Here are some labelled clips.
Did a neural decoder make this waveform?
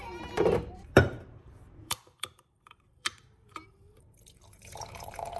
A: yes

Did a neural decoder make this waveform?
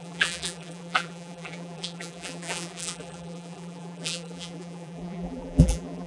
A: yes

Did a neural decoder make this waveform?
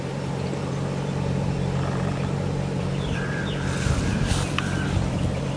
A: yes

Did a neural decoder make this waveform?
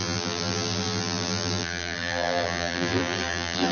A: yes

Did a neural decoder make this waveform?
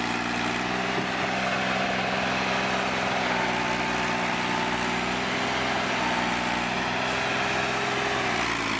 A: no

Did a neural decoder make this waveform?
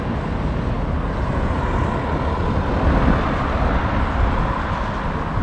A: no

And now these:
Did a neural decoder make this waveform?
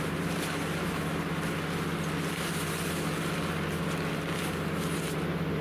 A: no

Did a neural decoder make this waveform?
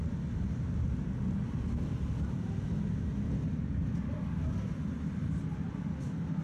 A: no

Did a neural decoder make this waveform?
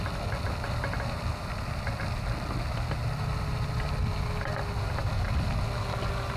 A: no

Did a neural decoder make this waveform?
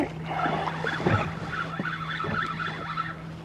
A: no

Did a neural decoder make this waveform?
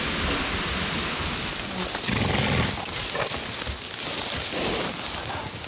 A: no